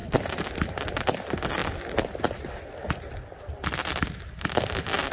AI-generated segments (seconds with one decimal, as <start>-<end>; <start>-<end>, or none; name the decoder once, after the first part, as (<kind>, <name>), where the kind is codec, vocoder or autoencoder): none